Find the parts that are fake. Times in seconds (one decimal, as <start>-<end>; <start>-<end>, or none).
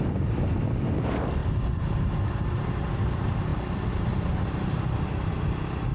none